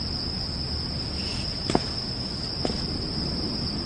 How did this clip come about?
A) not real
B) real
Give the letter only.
B